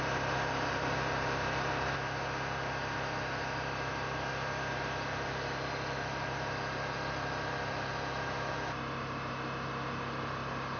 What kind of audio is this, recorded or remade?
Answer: recorded